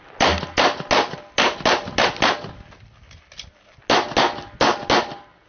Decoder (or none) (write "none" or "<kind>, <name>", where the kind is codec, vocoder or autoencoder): none